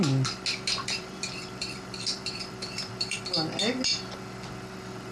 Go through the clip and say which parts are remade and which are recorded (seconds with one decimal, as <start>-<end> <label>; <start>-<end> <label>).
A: 0.0-0.8 recorded; 0.8-3.2 remade; 3.2-5.1 recorded